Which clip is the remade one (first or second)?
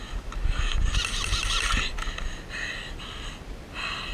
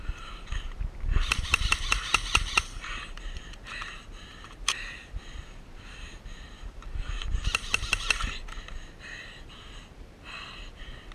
second